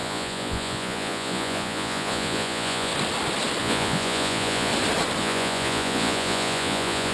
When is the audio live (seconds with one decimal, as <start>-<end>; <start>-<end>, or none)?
2.9-3.6; 4.7-5.2